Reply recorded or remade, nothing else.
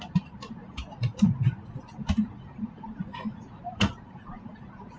remade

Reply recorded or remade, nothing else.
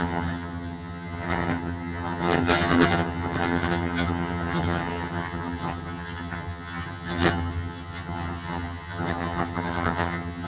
remade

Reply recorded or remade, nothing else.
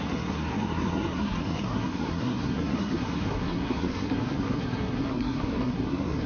remade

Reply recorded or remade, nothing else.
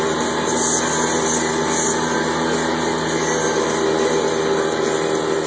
recorded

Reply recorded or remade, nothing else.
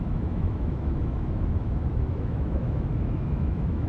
remade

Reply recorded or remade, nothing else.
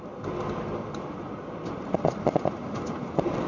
recorded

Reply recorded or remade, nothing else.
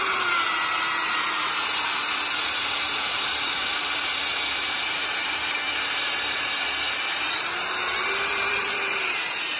remade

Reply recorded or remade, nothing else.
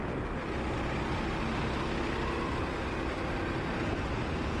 recorded